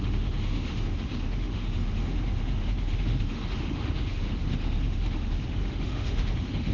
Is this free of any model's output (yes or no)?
no